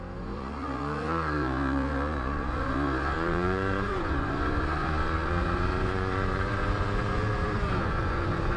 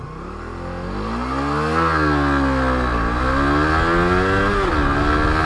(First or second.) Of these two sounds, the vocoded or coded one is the first